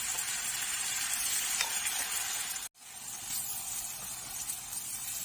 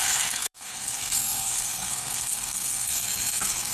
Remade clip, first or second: second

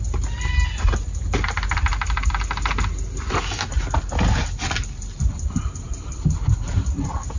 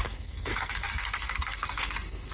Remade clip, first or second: second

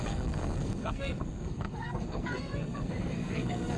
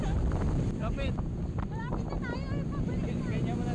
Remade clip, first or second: first